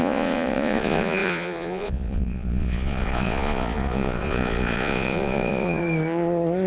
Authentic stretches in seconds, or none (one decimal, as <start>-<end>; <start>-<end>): 5.8-6.7